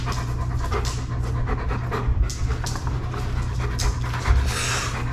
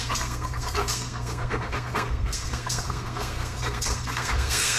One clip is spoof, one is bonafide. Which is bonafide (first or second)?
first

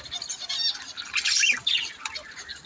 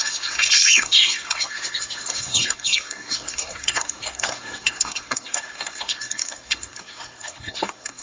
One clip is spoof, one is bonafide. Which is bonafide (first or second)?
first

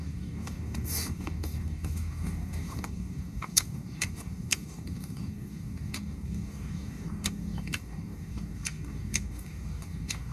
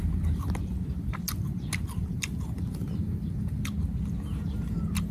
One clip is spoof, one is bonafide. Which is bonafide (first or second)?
second